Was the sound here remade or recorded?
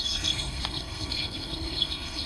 remade